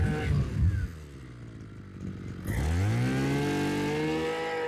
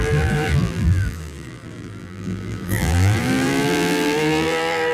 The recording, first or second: first